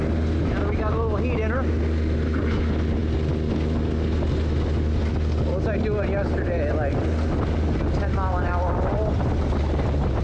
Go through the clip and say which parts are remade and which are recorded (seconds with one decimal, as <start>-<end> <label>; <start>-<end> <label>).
0.0-10.2 recorded